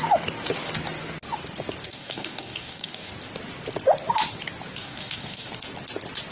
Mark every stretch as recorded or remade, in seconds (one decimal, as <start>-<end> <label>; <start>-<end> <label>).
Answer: 0.0-1.8 recorded; 1.8-3.1 remade; 3.1-4.8 recorded; 4.8-5.5 remade; 5.5-6.3 recorded